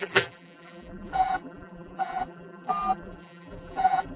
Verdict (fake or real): fake